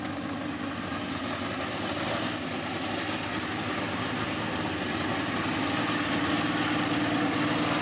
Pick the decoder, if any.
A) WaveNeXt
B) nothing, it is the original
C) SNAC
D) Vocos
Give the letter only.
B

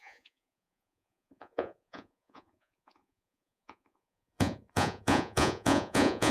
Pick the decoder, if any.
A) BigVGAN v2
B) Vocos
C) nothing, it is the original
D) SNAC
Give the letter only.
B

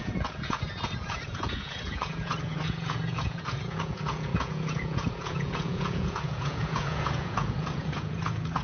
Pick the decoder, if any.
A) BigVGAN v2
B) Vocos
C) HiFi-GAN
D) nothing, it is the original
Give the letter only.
B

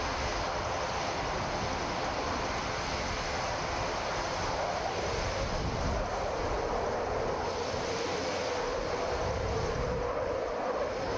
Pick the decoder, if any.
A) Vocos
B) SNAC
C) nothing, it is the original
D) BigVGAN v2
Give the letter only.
C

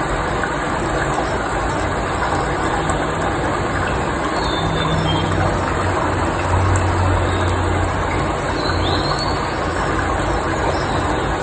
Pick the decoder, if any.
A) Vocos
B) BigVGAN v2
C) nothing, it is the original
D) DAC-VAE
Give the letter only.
C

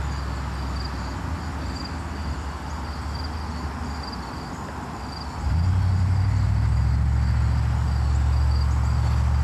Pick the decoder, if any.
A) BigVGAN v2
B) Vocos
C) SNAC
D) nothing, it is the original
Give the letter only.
D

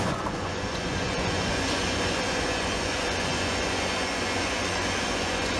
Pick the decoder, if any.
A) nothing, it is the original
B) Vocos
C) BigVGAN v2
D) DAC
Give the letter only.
B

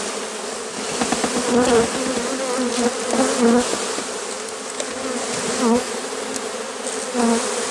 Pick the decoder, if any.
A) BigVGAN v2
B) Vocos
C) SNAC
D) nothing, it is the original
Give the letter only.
D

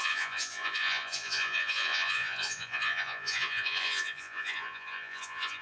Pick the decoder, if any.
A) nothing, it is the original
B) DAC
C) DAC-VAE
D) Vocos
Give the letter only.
D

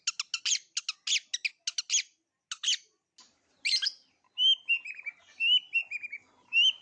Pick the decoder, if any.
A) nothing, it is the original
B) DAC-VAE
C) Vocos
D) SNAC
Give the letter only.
A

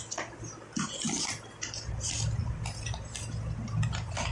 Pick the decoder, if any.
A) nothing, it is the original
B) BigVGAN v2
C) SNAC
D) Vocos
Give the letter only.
A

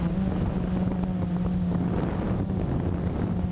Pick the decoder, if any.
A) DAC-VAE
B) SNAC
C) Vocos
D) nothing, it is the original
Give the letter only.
D